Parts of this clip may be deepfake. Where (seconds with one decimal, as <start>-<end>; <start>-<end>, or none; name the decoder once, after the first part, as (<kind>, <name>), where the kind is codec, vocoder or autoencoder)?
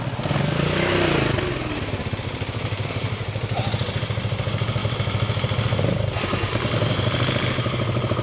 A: none